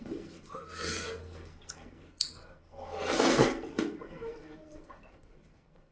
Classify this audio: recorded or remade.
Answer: remade